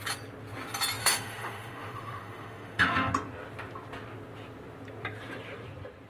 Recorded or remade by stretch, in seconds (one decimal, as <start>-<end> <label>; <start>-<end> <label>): 0.0-1.0 recorded; 1.0-3.1 remade; 3.1-6.1 recorded